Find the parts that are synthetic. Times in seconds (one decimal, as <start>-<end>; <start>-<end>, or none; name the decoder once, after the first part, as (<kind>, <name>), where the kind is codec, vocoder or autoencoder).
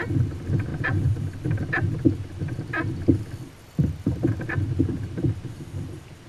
none